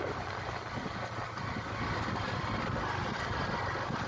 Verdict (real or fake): real